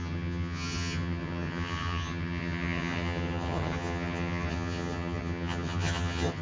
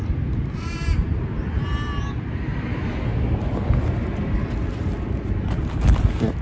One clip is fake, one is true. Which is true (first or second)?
second